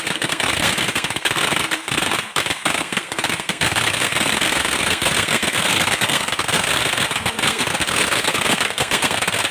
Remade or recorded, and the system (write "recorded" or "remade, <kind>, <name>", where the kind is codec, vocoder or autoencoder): remade, codec, SNAC